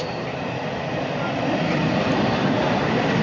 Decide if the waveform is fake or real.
fake